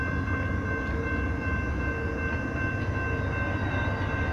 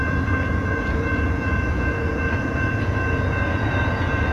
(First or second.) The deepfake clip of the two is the second